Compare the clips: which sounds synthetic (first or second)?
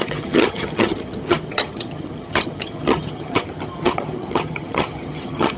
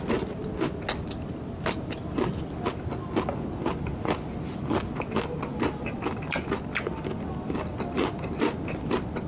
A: first